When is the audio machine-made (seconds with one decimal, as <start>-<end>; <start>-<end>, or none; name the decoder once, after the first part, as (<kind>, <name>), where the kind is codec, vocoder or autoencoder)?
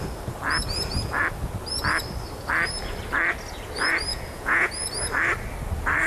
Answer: 4.1-4.9 (vocoder, Vocos)